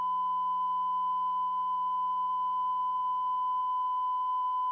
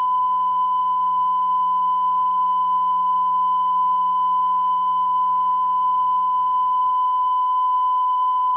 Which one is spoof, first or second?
second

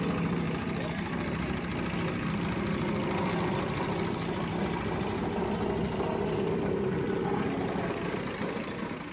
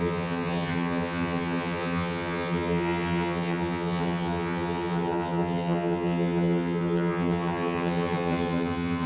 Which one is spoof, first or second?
second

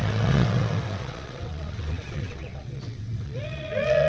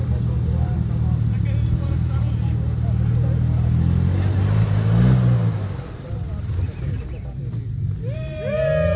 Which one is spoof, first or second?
first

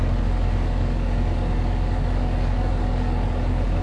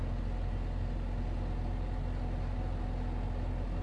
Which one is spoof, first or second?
first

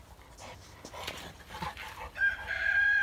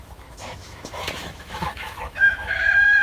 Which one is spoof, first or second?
second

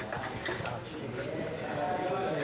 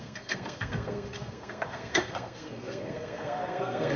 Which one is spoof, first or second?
second